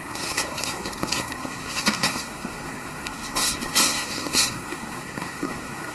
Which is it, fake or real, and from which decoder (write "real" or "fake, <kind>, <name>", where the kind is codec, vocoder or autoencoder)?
fake, codec, SNAC